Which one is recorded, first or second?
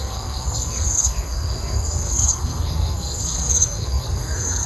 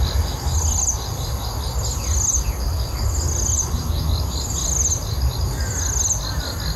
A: second